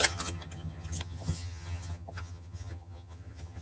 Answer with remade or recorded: remade